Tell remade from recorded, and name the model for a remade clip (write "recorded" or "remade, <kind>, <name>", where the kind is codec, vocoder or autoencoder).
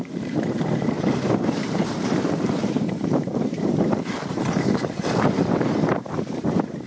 remade, vocoder, BigVGAN v2